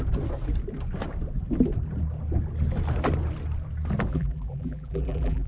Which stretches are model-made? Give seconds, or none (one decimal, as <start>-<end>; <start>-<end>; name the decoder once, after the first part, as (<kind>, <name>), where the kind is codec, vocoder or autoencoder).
4.1-5.5 (vocoder, BigVGAN v2)